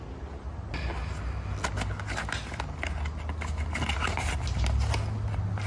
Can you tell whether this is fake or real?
real